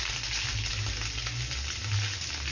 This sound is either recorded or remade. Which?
recorded